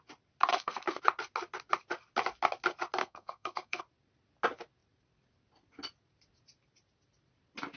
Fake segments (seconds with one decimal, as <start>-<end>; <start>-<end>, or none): 0.5-1.0; 3.0-3.8